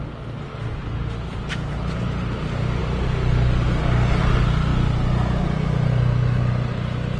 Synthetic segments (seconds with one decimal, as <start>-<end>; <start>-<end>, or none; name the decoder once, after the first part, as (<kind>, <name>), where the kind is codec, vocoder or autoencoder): none